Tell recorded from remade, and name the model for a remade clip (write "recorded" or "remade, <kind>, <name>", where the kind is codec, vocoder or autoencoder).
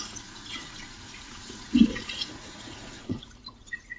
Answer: remade, vocoder, Vocos